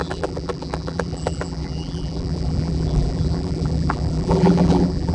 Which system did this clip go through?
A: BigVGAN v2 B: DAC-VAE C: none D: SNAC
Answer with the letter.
A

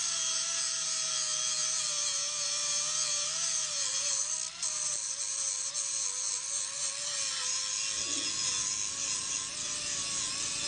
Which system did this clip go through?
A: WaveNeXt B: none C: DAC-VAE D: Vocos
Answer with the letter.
B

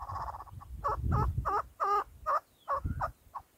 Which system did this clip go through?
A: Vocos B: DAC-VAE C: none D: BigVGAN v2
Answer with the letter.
C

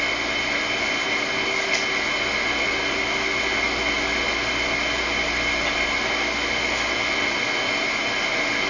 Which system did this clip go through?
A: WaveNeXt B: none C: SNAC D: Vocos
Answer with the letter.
B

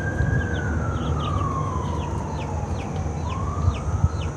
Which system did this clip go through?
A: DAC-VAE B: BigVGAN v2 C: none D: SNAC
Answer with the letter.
C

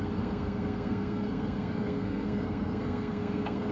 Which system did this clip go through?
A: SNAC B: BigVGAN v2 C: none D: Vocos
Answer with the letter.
A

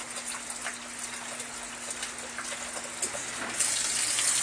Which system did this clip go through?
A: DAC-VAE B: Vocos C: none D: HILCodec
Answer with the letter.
C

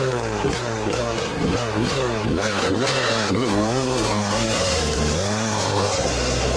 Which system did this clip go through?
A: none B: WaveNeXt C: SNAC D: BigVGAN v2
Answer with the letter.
C